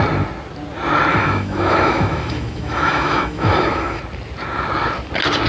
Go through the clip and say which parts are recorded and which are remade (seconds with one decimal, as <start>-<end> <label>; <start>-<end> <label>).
0.0-1.1 recorded; 1.1-4.0 remade; 4.0-5.5 recorded